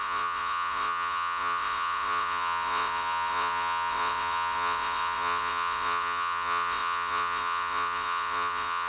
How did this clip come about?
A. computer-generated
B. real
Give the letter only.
A